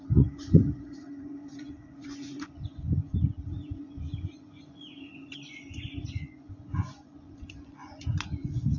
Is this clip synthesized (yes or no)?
yes